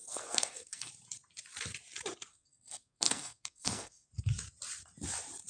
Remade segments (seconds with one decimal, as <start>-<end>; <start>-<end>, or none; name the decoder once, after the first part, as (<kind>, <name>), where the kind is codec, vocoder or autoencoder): 0.0-0.9 (codec, SNAC); 2.3-4.1